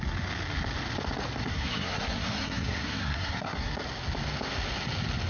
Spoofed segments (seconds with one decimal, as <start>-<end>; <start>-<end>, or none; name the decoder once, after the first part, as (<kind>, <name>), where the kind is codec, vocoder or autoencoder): 1.4-3.7 (codec, SNAC)

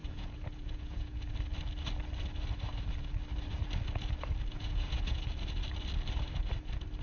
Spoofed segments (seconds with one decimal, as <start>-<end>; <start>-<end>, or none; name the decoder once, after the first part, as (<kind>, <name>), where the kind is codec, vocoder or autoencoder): 0.0-1.2 (vocoder, Vocos); 4.5-5.2

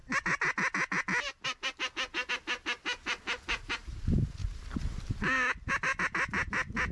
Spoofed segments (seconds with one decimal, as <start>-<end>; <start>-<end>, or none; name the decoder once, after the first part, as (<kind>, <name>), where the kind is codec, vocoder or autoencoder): 3.0-3.7 (vocoder, BigVGAN v2); 4.4-5.7